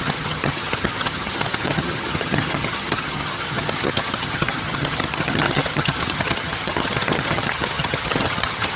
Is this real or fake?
fake